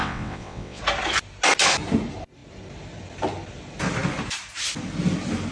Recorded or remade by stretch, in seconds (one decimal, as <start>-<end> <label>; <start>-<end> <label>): 0.0-0.8 remade; 0.8-5.5 recorded